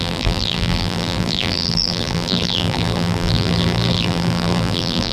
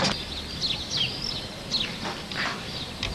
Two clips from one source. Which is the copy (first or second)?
first